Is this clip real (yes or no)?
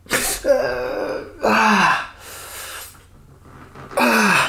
yes